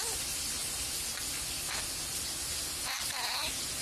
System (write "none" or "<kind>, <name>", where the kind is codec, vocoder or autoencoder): none